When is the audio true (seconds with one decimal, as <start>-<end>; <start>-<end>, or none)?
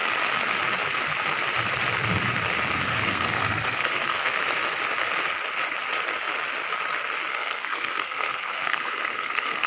0.0-2.9; 4.4-7.3